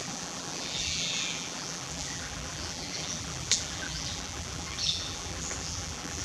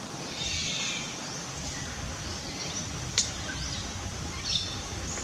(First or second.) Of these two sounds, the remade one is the first